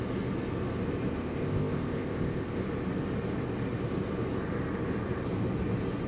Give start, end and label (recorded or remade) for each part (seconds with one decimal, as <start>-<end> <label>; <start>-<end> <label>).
0.0-1.2 recorded; 1.2-2.6 remade; 2.6-6.1 recorded